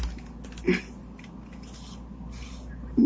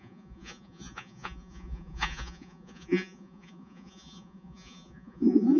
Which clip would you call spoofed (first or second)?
second